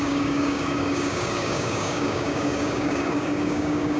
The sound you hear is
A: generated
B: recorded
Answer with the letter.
A